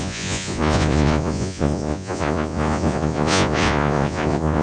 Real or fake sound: fake